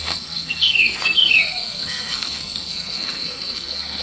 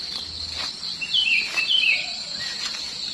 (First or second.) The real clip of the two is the second